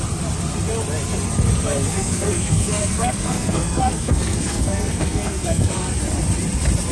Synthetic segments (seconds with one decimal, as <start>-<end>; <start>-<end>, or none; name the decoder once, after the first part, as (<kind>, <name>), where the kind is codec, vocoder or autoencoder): 1.9-6.0 (codec, SNAC)

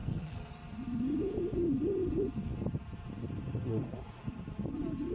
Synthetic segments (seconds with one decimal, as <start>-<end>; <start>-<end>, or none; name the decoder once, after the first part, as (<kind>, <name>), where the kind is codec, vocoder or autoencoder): 0.0-0.5 (codec, SNAC)